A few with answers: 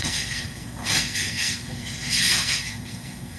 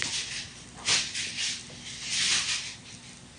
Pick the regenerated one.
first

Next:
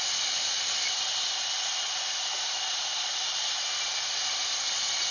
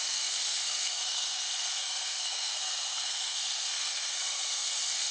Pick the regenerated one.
second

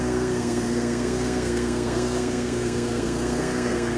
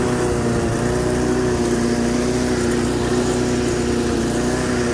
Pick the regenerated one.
first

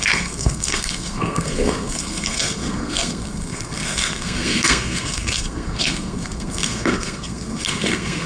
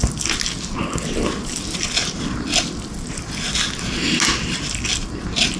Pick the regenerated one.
first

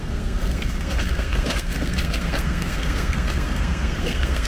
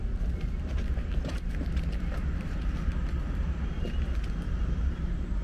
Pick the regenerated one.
first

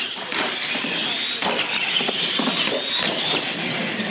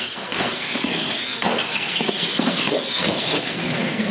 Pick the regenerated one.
second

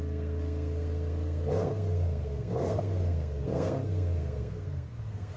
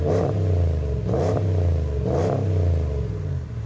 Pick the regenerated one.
first